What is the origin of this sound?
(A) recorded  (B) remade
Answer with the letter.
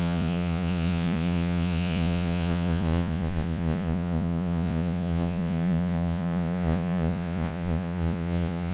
B